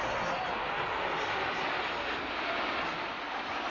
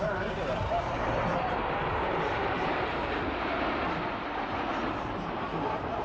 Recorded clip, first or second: first